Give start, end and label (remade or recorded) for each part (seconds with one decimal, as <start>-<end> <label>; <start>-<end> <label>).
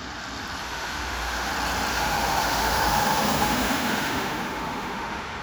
0.0-0.6 recorded; 0.6-1.5 remade; 1.5-1.9 recorded; 1.9-5.4 remade